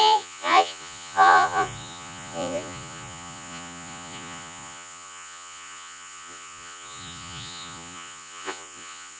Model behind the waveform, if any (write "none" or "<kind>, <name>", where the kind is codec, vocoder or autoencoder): vocoder, Vocos